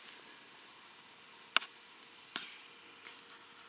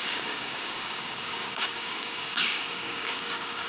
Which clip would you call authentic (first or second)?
first